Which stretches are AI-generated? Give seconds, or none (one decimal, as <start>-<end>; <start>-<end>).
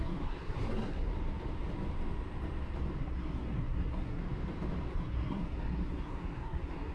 0.0-1.1; 3.0-4.2; 4.9-6.9